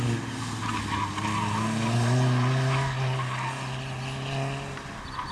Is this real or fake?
real